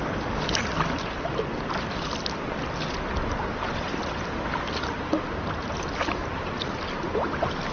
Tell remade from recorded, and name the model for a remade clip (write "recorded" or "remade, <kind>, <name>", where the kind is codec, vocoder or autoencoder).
recorded